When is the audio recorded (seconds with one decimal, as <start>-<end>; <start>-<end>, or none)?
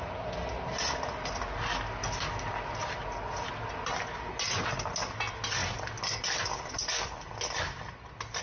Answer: 0.0-8.4